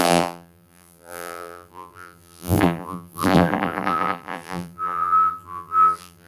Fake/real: fake